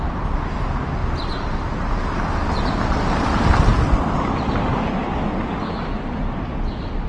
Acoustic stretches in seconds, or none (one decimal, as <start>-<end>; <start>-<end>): 0.0-1.0; 1.8-7.1